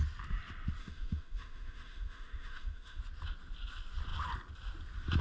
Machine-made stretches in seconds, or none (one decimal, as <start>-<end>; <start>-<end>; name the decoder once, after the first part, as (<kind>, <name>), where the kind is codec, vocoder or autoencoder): 0.8-3.0 (autoencoder, DAC-VAE)